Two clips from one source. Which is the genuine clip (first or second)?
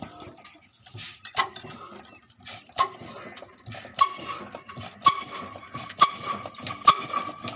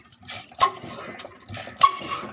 first